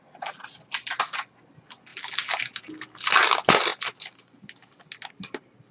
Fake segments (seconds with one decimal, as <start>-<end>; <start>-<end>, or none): none